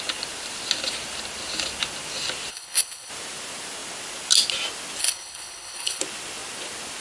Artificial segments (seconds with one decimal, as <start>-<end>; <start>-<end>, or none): 2.5-3.1; 5.0-6.0